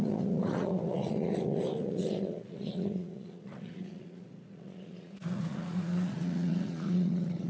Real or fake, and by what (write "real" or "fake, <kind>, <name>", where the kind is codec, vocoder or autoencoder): fake, vocoder, Vocos